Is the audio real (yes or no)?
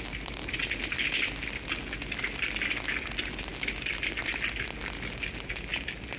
yes